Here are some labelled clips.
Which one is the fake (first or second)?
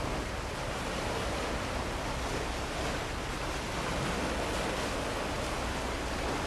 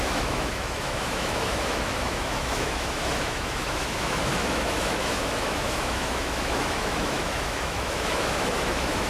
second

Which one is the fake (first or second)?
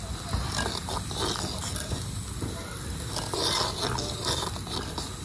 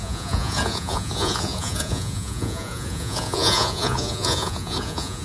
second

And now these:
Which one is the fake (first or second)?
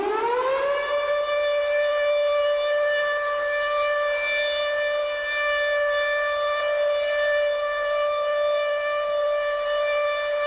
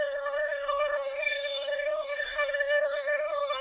second